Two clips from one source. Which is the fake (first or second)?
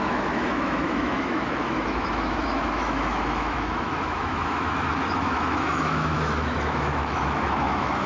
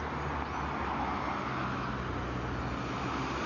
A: first